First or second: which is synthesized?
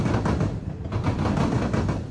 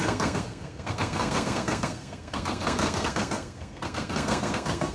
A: second